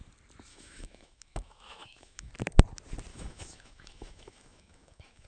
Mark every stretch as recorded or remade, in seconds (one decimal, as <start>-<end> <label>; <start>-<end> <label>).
0.0-0.5 recorded; 0.5-2.3 remade; 2.3-3.1 recorded; 3.1-5.3 remade